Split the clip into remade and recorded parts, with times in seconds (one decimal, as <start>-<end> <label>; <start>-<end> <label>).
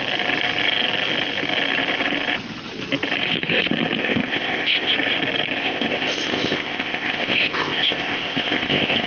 0.0-4.0 recorded; 4.0-4.9 remade; 4.9-5.6 recorded; 5.6-9.1 remade